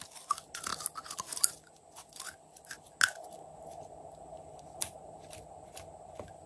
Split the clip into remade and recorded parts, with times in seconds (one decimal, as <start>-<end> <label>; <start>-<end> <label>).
0.0-6.5 recorded